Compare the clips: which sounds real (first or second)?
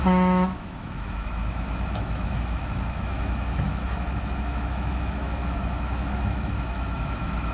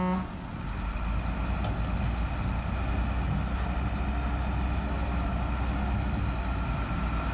second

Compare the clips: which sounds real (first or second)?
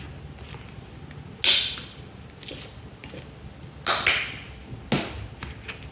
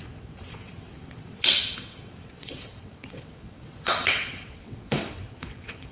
first